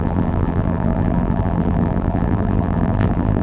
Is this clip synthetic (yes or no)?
yes